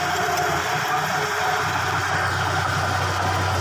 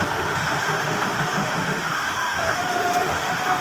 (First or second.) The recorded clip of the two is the first